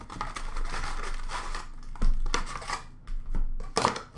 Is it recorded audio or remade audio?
recorded